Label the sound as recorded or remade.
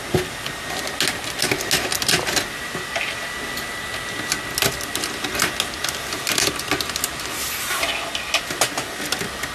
recorded